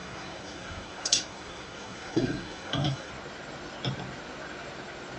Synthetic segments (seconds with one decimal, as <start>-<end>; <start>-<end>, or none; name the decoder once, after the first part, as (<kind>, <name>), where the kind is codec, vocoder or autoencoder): 0.0-3.1 (codec, SNAC)